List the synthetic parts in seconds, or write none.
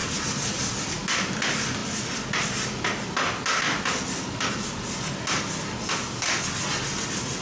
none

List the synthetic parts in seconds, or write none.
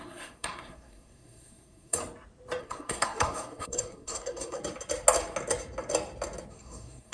0.0-2.0 (codec, SNAC); 2.6-4.6; 6.5-7.1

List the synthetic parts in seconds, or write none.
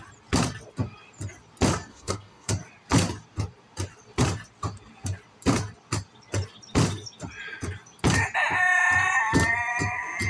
1.9-2.5 (codec, SNAC)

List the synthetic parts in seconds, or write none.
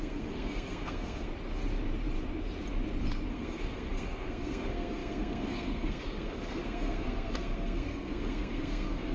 0.0-1.3 (codec, SNAC); 3.3-9.1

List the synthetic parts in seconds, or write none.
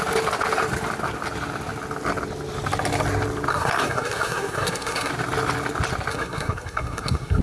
3.5-5.1 (codec, SNAC); 6.1-7.4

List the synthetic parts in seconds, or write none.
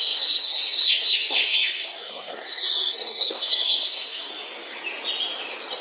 0.0-4.3 (codec, SNAC)